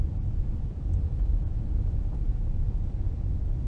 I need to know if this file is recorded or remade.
remade